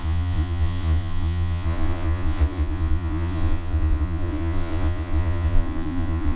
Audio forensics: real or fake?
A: fake